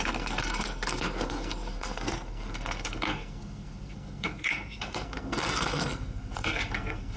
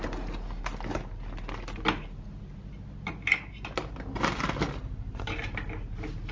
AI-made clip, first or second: first